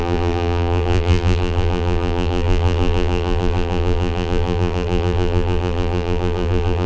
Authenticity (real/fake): fake